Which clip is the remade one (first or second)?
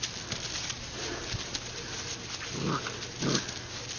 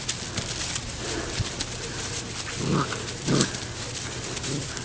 second